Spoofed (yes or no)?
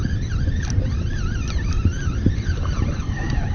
no